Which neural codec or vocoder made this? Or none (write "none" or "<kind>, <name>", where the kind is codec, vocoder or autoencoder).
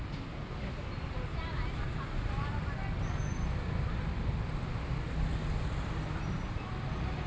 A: none